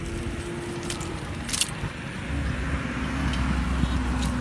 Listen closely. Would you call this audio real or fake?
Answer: real